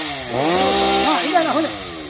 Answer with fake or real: real